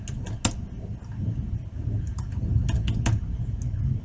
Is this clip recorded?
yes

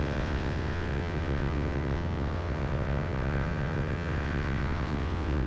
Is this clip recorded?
no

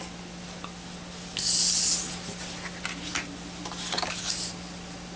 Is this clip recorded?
yes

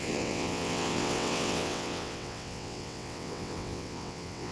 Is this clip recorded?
no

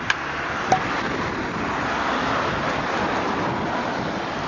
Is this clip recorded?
yes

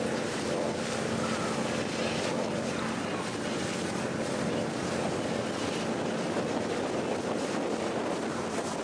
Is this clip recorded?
yes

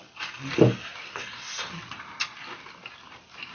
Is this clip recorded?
yes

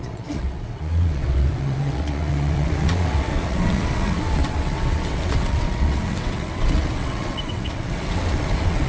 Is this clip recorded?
no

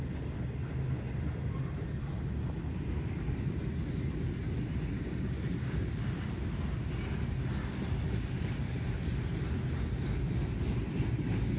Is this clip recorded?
yes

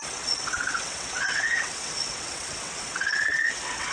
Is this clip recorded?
no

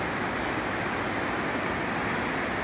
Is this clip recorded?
yes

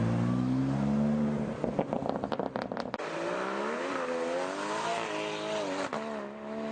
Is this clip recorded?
yes